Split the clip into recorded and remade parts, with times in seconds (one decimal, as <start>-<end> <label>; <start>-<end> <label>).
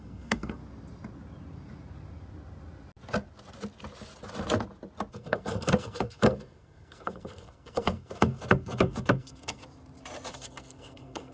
0.0-0.6 remade; 0.6-5.1 recorded; 5.1-9.6 remade; 9.6-10.3 recorded; 10.3-11.3 remade